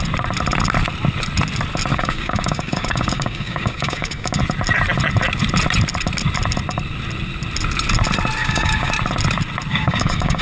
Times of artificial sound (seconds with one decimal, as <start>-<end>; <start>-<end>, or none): 1.9-4.4; 8.4-8.9; 9.7-10.4